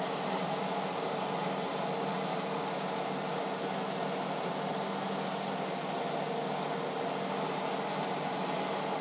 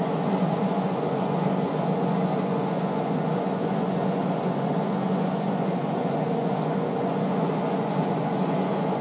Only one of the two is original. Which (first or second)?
first